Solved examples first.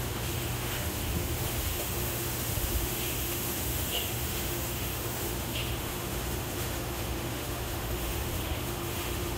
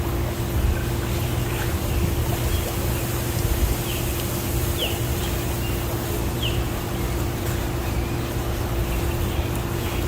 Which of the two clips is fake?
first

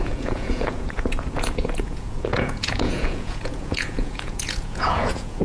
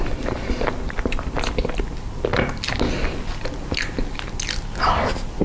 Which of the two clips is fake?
first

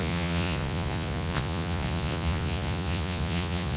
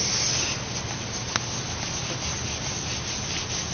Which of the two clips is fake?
first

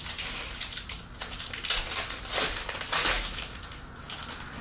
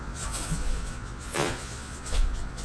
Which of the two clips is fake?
second